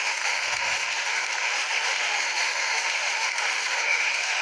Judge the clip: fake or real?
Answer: fake